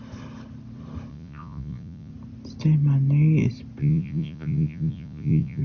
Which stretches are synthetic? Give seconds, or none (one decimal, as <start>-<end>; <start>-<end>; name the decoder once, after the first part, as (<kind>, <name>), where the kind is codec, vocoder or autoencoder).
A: 1.1-2.1 (vocoder, Vocos); 3.8-5.6